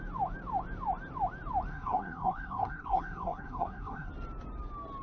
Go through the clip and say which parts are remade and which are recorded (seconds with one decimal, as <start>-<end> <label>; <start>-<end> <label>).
0.0-1.7 recorded; 1.7-4.1 remade; 4.1-5.0 recorded